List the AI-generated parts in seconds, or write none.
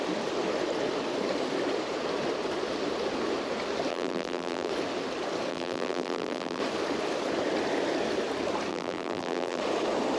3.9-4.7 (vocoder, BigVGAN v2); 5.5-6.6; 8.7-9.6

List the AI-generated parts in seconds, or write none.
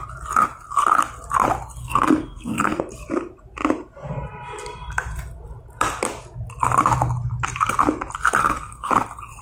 1.8-2.8 (codec, SNAC); 8.4-8.9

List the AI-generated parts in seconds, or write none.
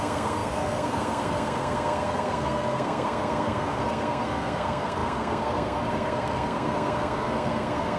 0.0-8.0 (codec, SNAC)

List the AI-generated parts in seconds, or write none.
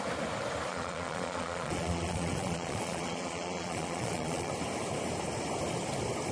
0.7-4.5 (vocoder, Vocos)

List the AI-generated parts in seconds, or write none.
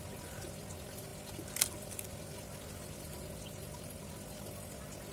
none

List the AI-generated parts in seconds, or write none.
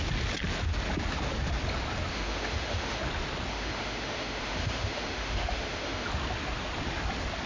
2.1-3.0 (autoencoder, DAC-VAE); 3.5-6.1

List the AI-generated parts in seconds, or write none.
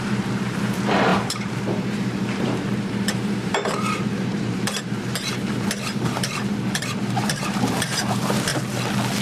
0.0-8.5 (vocoder, BigVGAN v2)